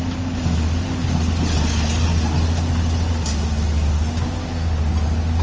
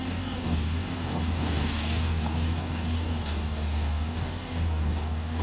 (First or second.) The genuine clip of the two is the first